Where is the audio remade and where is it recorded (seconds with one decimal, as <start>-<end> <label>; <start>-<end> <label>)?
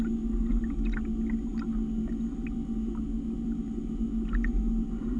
0.0-5.2 recorded